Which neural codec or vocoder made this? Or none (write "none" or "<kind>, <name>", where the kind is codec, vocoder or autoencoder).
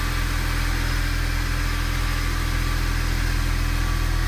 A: none